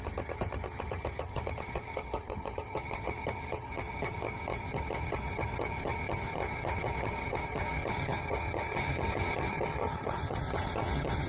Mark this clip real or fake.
fake